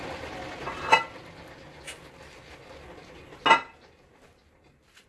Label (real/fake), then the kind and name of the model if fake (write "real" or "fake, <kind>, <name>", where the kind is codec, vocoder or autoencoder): real